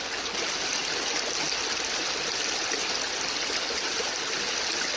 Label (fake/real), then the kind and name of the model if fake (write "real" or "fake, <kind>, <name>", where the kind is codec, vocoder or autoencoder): real